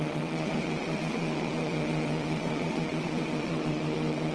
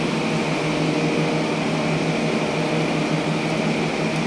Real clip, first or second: second